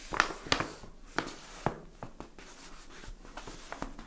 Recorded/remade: recorded